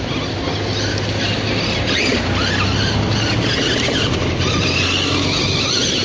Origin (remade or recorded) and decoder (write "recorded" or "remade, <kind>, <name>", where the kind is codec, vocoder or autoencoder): recorded